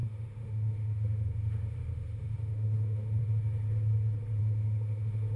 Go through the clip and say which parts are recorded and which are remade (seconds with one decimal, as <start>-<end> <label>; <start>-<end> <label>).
0.0-3.2 remade; 3.2-4.4 recorded; 4.4-5.4 remade